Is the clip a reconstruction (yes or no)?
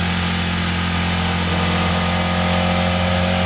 no